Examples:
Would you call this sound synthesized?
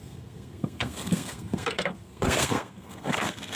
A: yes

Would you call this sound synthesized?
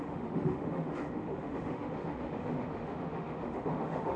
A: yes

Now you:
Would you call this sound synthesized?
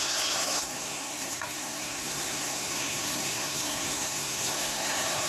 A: yes